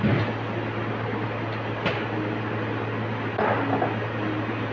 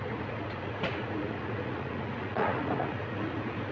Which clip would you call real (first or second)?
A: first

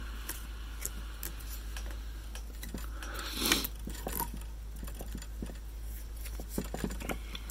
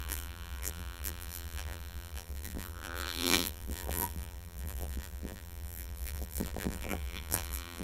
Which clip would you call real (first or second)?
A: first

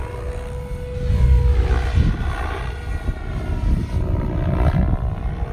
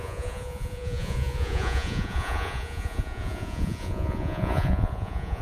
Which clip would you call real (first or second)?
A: first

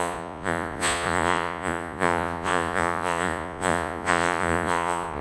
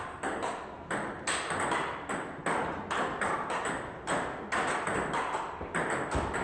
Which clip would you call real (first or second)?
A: second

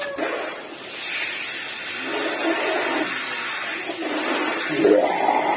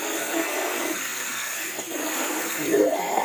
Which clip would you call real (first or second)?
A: first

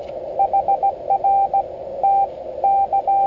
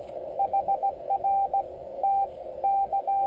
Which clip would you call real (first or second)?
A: first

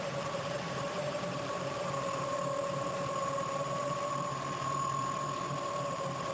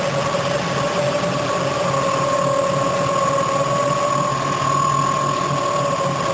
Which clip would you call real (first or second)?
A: second